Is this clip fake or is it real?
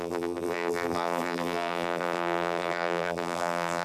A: fake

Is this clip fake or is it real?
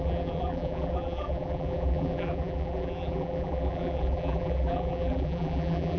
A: fake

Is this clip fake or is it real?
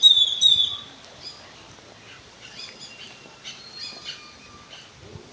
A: real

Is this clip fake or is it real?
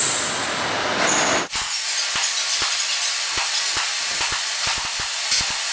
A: real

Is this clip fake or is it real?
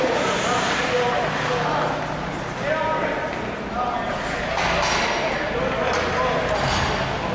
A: real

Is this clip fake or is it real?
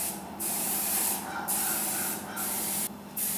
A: fake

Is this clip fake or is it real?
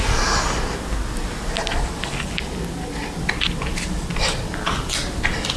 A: real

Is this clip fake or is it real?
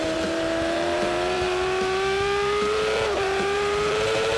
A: fake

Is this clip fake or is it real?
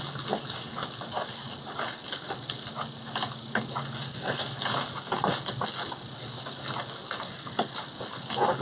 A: real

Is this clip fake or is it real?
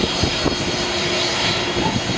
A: real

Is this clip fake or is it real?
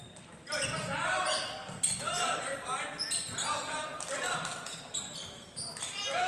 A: real